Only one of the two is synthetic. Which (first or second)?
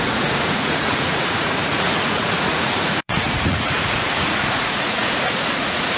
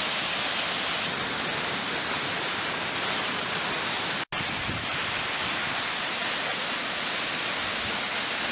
first